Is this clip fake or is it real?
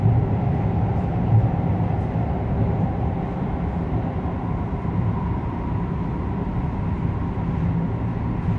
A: real